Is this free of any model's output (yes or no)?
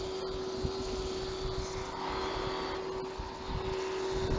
yes